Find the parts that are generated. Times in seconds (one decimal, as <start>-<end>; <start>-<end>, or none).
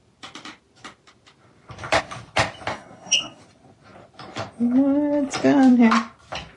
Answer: 2.7-3.4